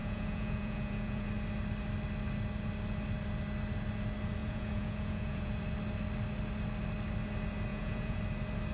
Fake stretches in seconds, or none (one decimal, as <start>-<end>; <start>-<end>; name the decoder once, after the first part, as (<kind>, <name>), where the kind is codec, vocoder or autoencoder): 0.0-1.3 (vocoder, Vocos); 4.4-5.5; 7.7-8.2